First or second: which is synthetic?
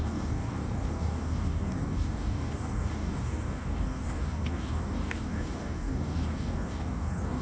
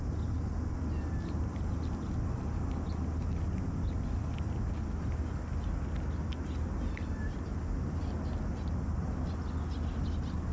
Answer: first